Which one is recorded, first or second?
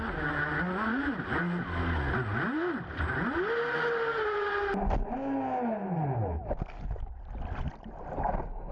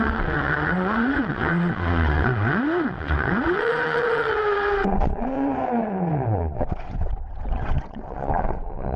first